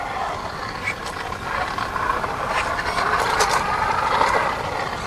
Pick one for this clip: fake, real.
real